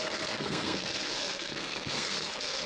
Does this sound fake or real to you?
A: fake